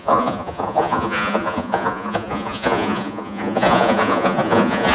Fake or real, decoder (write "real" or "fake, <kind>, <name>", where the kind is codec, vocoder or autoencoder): fake, vocoder, Vocos